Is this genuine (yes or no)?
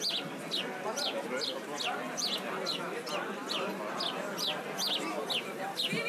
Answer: yes